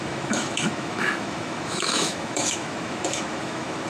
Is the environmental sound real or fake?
fake